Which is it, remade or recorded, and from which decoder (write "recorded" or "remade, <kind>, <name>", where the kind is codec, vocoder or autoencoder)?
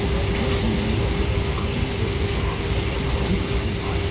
recorded